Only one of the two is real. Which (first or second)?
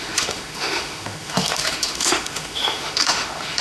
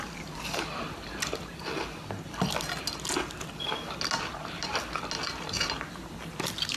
second